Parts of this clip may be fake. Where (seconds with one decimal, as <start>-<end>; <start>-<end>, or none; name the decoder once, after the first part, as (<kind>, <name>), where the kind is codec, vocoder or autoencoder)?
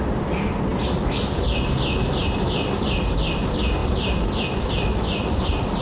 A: none